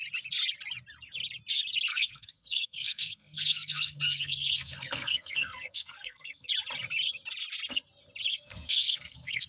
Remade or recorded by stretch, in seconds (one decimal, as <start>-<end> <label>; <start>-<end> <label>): 0.0-1.9 recorded; 1.9-6.5 remade; 6.5-8.3 recorded; 8.3-9.5 remade